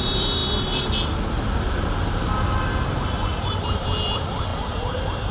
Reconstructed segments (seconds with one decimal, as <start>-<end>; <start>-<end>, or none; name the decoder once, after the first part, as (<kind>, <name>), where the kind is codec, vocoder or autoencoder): none